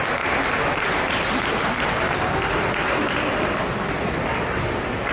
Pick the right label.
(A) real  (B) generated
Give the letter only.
A